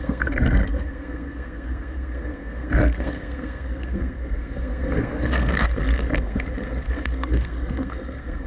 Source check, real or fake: fake